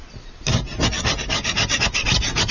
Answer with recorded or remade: recorded